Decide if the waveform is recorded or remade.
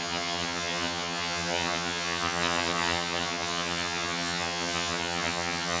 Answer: remade